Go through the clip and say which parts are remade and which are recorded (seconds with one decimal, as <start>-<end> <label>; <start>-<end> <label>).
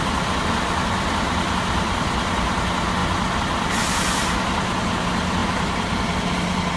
0.0-6.8 recorded